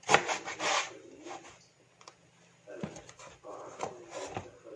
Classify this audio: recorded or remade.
recorded